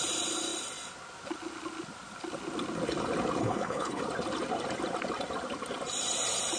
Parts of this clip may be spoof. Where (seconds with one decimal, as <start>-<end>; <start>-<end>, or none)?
3.4-4.0